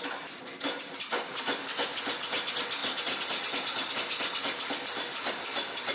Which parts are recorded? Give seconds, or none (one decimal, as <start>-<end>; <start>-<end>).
0.0-5.9